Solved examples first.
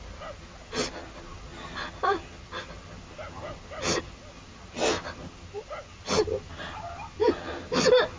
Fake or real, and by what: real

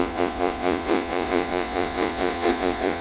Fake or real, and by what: fake, vocoder, Vocos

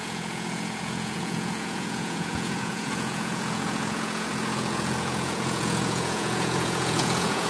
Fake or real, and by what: fake, vocoder, Vocos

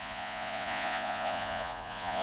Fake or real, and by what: fake, vocoder, Vocos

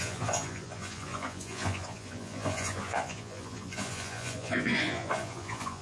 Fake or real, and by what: fake, vocoder, Vocos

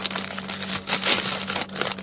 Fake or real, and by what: real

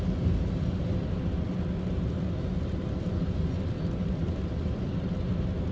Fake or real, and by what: real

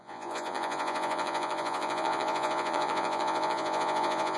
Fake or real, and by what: fake, vocoder, Vocos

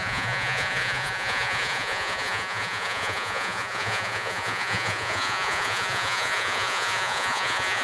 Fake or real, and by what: fake, vocoder, Vocos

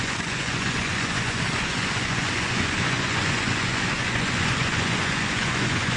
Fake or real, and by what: fake, vocoder, Vocos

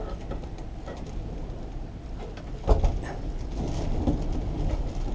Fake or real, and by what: real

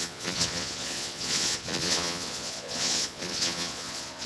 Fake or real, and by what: fake, vocoder, Vocos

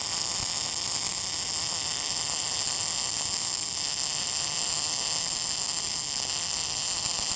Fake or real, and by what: real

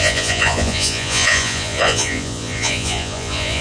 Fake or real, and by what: fake, vocoder, Vocos